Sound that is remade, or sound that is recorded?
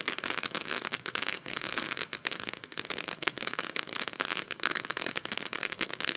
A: remade